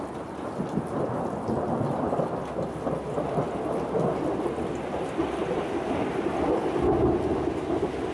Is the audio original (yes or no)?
yes